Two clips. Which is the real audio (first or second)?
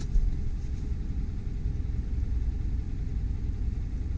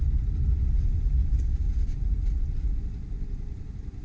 first